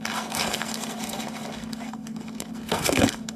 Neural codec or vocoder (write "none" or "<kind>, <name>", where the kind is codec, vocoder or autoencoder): codec, SNAC